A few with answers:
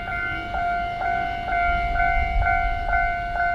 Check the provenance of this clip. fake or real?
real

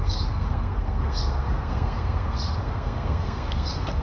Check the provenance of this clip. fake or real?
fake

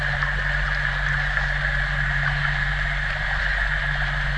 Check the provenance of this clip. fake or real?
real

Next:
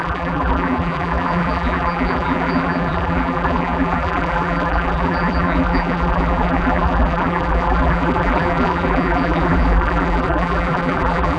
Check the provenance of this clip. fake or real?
fake